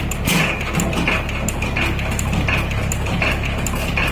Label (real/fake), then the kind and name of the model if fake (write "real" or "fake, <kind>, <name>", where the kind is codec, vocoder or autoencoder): real